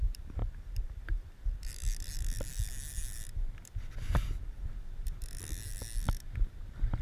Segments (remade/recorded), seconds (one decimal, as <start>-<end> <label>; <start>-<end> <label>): 0.0-7.0 recorded